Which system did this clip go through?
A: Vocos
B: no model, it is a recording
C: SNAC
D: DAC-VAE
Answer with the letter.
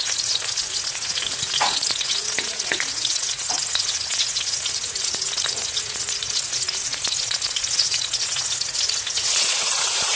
A